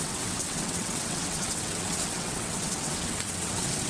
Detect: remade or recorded remade